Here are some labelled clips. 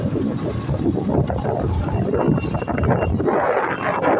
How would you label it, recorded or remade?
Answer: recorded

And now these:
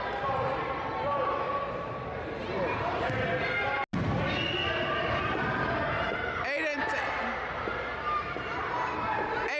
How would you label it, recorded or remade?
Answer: recorded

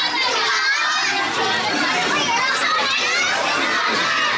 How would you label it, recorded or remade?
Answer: recorded